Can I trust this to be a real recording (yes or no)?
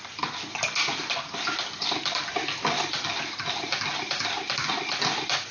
yes